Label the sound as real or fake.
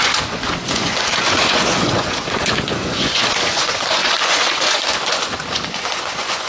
fake